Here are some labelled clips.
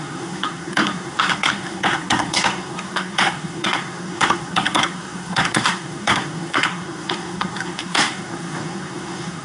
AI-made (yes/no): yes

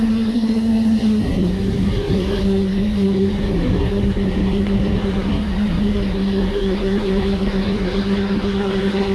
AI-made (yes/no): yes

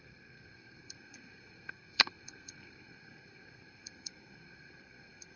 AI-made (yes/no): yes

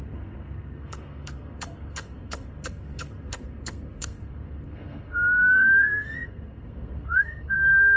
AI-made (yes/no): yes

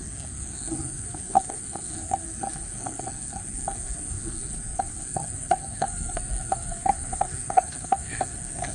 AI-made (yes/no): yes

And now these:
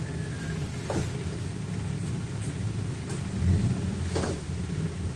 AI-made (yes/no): no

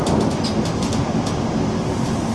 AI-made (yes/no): no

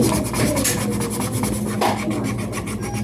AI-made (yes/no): no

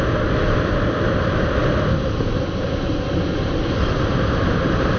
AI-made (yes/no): no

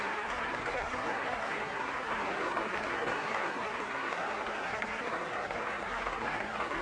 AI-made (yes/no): yes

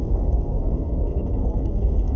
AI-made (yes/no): yes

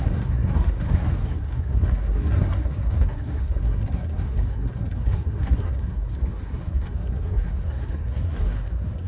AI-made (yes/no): yes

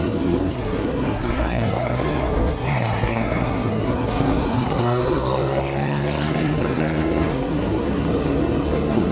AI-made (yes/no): yes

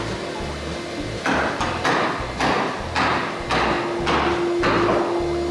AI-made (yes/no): no